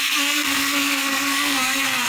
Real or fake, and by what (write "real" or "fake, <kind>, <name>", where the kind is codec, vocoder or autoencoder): fake, codec, SNAC